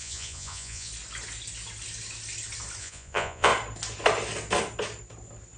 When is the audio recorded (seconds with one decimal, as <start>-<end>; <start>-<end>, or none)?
0.9-2.8; 3.5-5.6